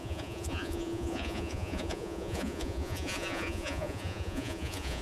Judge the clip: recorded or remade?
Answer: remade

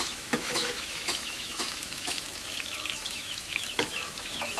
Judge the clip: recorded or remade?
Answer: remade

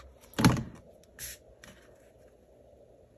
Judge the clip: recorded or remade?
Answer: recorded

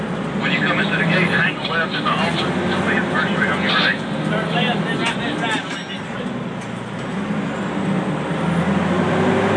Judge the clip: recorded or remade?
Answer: recorded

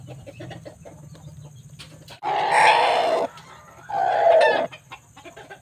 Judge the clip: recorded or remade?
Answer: recorded